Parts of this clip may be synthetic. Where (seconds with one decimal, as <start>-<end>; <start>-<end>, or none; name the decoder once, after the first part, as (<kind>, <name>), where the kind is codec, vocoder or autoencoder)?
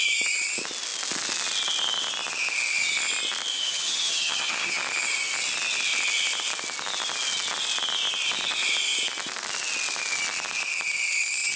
3.5-4.8 (vocoder, HiFi-GAN)